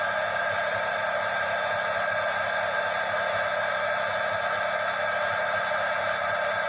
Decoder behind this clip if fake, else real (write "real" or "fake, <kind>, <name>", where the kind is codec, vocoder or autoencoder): real